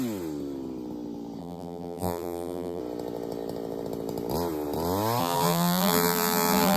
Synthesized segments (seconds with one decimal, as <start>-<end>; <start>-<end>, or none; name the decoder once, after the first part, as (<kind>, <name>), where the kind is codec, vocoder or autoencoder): 1.4-2.8 (vocoder, BigVGAN v2); 5.2-6.8